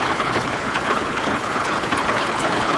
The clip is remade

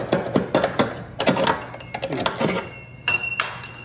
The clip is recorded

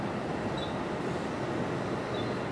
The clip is recorded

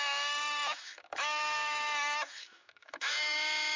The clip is remade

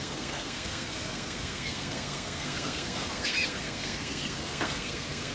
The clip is remade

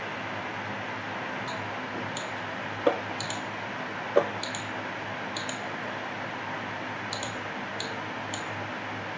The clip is recorded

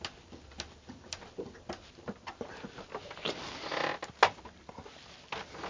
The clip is recorded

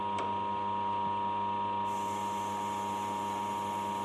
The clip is recorded